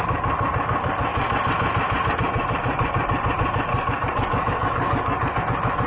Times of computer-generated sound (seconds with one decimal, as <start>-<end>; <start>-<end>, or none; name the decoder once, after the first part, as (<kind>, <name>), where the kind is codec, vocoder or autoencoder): 3.7-5.4 (codec, DAC)